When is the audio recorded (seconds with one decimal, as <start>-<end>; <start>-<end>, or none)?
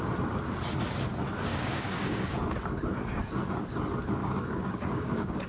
0.0-1.5; 2.6-4.2